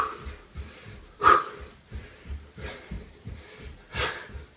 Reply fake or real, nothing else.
fake